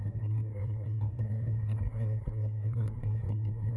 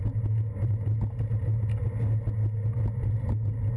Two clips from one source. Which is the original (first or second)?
second